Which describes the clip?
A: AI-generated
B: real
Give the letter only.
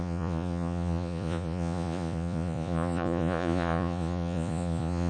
A